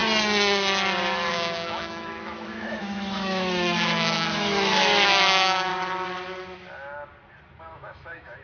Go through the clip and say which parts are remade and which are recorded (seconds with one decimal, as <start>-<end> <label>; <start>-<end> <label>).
0.0-1.3 recorded; 1.3-5.7 remade; 5.7-7.6 recorded; 7.6-8.4 remade